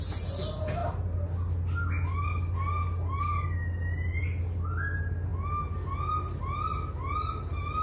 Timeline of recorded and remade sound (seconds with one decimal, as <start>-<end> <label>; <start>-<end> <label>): 0.0-7.8 recorded